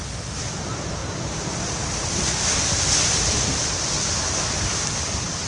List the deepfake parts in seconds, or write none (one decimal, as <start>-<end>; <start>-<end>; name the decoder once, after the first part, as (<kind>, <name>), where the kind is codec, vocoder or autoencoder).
none